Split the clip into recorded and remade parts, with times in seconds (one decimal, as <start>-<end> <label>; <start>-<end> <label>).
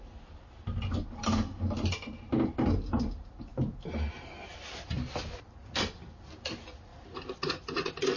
0.0-8.2 recorded